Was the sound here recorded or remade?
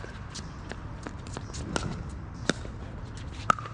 recorded